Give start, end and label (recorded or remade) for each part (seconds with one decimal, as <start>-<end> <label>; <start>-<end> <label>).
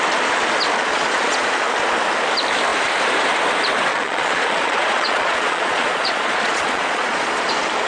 0.0-0.8 recorded; 0.8-1.6 remade; 1.6-3.9 recorded; 3.9-7.5 remade; 7.5-7.9 recorded